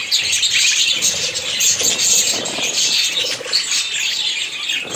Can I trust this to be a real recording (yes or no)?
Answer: yes